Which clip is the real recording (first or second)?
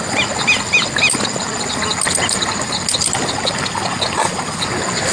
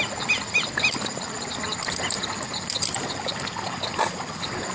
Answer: first